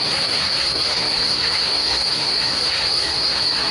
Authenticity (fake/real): fake